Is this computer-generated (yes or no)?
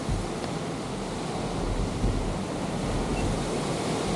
no